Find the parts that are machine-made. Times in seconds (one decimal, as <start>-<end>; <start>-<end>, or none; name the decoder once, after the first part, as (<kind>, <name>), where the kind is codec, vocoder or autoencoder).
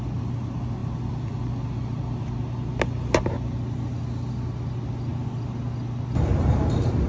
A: none